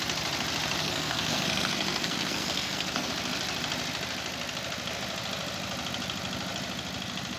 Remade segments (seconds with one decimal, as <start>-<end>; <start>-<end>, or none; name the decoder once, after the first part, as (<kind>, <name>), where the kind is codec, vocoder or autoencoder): 0.8-3.1 (codec, SNAC)